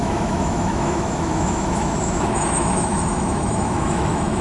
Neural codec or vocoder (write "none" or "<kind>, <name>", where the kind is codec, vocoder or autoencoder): autoencoder, DAC-VAE